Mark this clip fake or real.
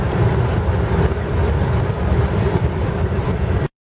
fake